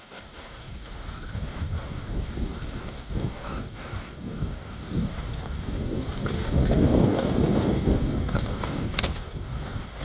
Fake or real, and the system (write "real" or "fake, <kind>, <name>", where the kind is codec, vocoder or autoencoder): fake, codec, DAC